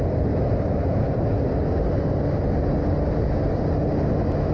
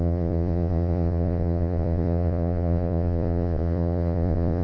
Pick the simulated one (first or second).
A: second